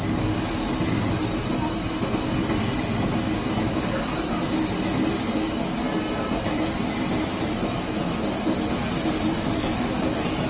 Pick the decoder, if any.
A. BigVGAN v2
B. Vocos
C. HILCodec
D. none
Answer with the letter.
D